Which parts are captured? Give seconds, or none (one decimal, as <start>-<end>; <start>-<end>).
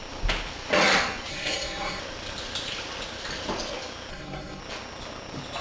0.0-1.3; 2.0-4.1; 4.6-5.6